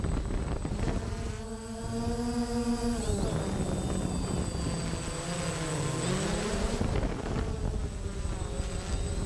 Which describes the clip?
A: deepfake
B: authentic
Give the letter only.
B